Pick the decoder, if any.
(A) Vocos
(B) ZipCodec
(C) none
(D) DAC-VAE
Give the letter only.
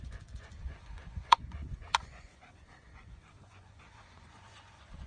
A